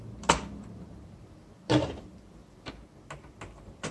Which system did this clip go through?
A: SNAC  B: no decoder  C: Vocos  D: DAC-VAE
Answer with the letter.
B